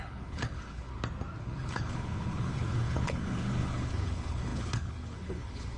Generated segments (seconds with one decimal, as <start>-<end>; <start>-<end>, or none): 0.0-0.9; 1.4-5.8

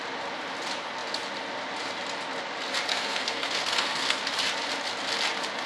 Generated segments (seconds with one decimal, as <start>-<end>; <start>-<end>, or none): 2.9-4.2

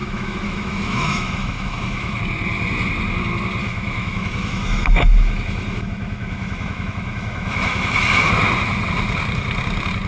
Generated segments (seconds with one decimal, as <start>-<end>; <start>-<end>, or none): 0.0-2.2; 3.6-8.3

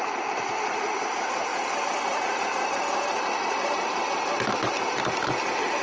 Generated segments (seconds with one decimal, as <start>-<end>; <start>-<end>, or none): none